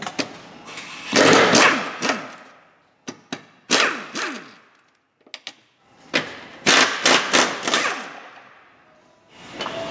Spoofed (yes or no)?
no